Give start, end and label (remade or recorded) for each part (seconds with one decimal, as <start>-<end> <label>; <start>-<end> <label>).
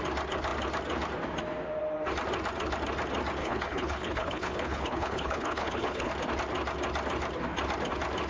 0.0-3.4 recorded; 3.4-6.1 remade; 6.1-8.3 recorded